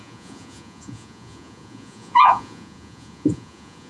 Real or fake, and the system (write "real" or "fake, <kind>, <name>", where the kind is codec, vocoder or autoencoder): fake, vocoder, Vocos